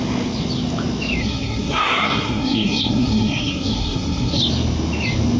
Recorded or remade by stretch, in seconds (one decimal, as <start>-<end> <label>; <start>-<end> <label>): 0.0-1.2 recorded; 1.2-4.4 remade; 4.4-5.4 recorded